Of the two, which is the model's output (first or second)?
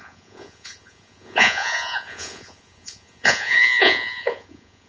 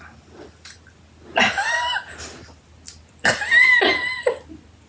first